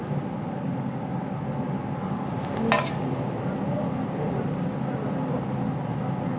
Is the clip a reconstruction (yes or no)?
no